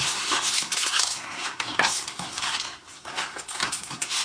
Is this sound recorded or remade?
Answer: remade